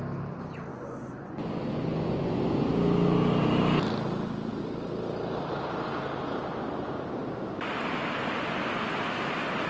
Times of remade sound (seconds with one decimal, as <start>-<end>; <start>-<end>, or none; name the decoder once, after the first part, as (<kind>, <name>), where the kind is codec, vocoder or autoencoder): 0.7-2.7 (vocoder, Vocos)